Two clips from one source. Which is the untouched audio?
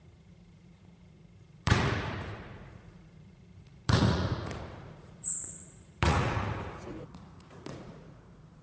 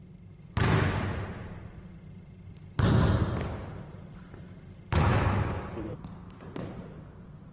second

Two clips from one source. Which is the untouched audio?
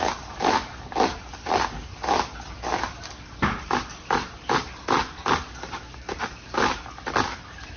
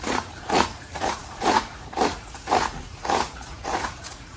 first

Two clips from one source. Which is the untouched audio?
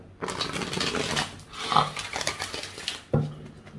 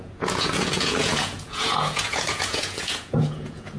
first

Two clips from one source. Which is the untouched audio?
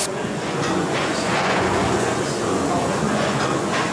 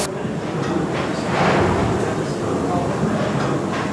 second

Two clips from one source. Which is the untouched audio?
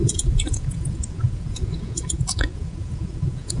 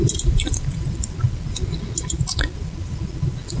second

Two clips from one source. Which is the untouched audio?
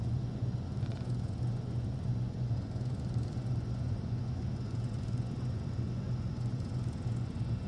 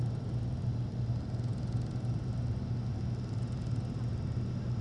second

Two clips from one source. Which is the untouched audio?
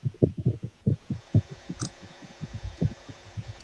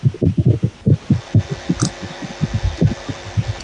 second